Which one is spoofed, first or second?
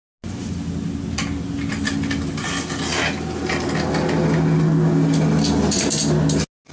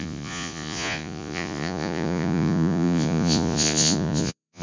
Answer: second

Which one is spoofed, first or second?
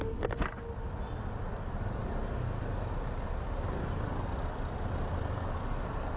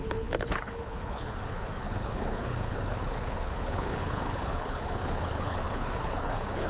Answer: second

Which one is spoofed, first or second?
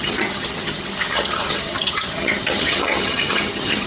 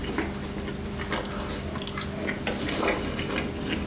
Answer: first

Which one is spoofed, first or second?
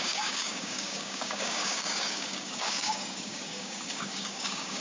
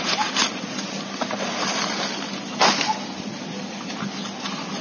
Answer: first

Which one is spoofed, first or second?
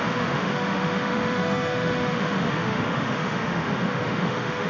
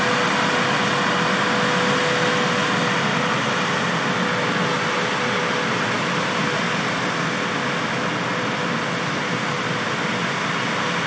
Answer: first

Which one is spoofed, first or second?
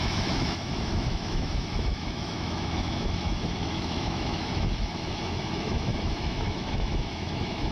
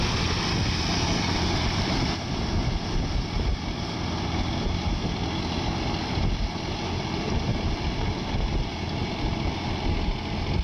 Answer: first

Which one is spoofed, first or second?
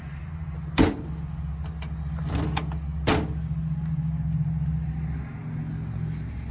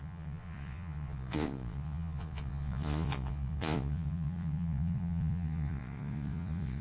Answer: second